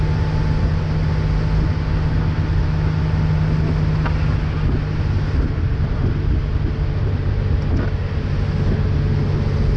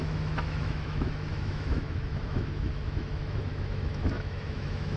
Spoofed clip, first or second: second